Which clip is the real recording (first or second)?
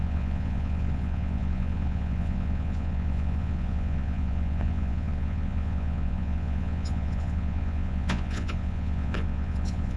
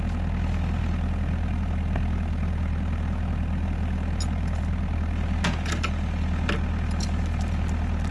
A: second